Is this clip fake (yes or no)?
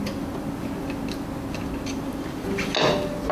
no